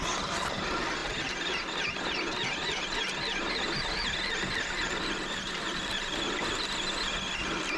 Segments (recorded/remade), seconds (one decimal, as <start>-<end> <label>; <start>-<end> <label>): 0.0-7.8 recorded